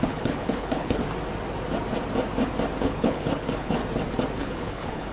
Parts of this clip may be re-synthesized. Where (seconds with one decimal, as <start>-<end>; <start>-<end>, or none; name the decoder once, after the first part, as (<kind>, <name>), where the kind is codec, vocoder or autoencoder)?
0.0-1.0 (codec, HILCodec); 2.8-3.8; 4.4-5.1